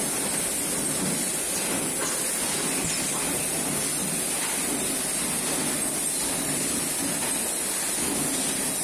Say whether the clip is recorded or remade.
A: recorded